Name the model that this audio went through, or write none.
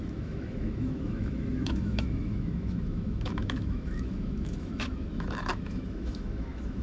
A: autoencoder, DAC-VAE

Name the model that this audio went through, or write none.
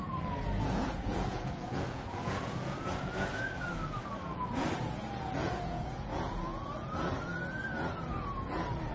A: vocoder, Vocos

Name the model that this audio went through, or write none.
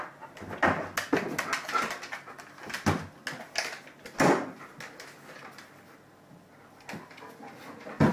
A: none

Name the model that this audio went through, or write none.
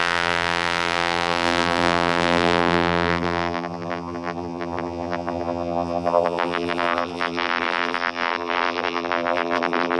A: vocoder, BigVGAN v2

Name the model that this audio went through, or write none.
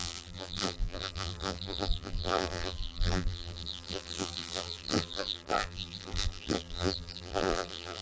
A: vocoder, BigVGAN v2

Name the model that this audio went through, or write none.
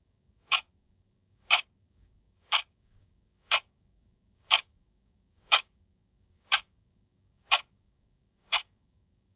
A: codec, DAC